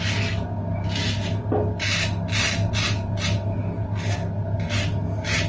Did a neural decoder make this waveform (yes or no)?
no